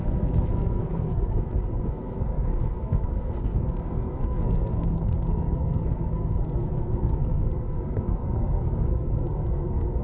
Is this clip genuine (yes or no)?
no